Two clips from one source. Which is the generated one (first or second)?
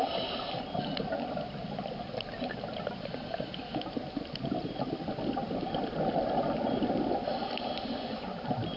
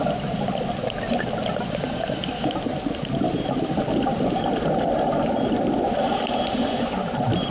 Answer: first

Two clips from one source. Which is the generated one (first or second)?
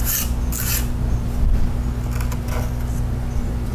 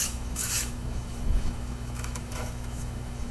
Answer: second